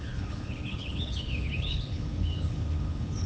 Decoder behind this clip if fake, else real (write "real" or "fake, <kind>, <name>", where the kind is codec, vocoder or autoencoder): fake, codec, HILCodec